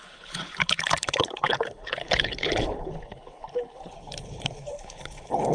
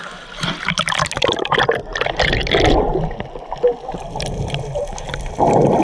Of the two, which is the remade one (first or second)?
first